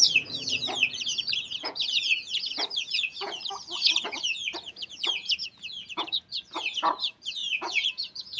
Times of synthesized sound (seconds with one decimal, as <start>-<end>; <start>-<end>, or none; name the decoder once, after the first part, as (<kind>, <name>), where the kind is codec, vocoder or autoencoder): 0.0-8.4 (vocoder, Vocos)